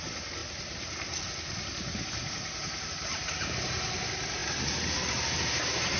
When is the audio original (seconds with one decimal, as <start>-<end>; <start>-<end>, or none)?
0.0-6.0